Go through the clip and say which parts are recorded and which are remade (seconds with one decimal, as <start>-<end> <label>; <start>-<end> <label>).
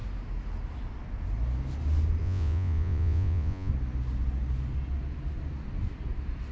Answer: 0.0-2.2 recorded; 2.2-3.7 remade; 3.7-6.5 recorded